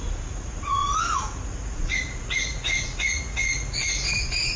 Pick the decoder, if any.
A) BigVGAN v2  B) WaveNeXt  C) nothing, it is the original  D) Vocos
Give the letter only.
D